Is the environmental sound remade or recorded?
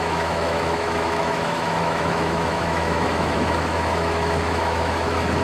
remade